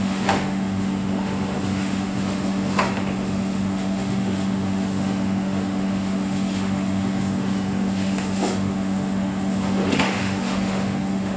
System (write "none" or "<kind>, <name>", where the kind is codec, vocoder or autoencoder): autoencoder, DAC-VAE